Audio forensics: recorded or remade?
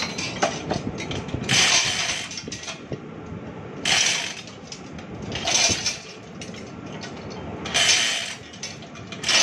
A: recorded